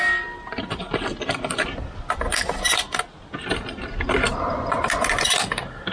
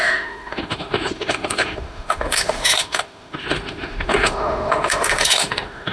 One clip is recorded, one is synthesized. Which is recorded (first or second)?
first